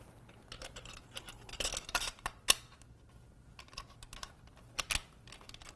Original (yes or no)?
yes